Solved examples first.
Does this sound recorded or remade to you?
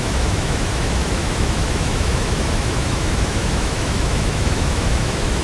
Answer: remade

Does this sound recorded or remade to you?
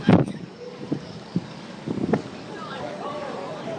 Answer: remade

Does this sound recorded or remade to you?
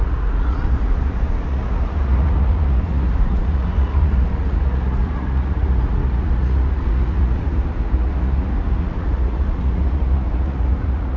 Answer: remade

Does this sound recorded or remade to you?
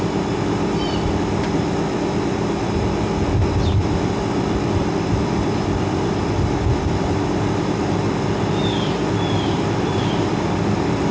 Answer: remade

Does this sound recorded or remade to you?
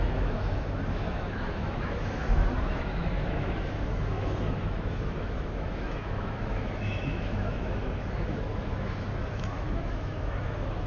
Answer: remade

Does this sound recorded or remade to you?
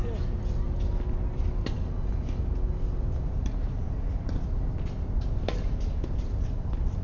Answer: recorded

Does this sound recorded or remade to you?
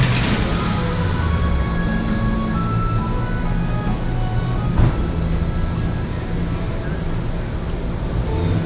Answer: recorded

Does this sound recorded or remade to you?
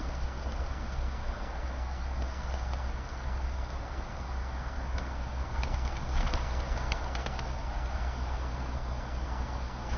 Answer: remade